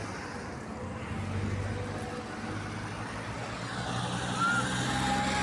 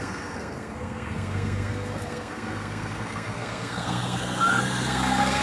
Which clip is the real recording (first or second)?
first